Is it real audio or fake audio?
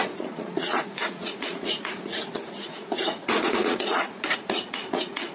fake